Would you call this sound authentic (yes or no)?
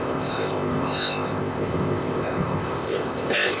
no